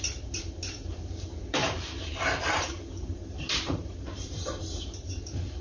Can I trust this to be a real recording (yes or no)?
no